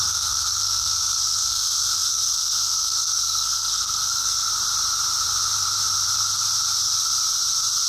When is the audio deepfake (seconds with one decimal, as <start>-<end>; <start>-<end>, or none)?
0.0-4.5